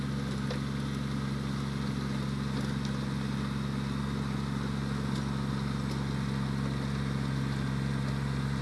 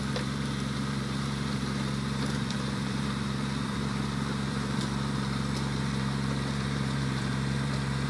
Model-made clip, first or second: second